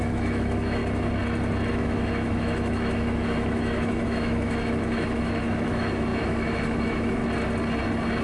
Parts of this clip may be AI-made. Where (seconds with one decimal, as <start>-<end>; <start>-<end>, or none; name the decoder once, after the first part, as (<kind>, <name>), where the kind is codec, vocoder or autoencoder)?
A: 0.0-0.8 (autoencoder, DAC-VAE); 1.7-7.2